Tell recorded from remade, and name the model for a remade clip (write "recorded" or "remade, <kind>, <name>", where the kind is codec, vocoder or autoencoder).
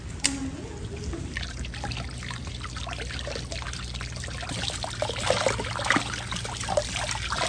recorded